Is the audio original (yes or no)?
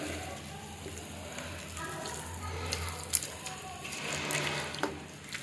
no